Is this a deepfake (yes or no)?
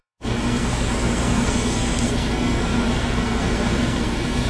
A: yes